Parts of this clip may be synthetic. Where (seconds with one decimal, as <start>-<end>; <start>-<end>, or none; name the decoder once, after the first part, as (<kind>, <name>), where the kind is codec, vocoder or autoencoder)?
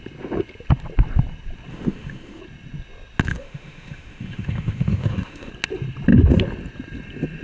1.7-2.4 (autoencoder, DAC-VAE); 3.3-5.5